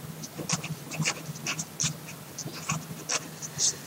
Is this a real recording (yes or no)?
yes